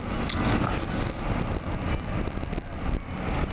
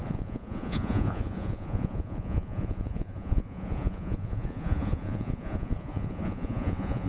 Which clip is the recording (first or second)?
first